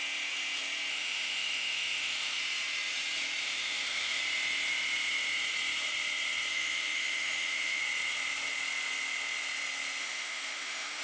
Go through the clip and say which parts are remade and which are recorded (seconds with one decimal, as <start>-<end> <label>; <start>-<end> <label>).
0.0-0.9 recorded; 0.9-2.4 remade; 2.4-3.4 recorded; 3.4-4.2 remade; 4.2-6.5 recorded; 6.5-7.8 remade; 7.8-10.0 recorded; 10.0-11.0 remade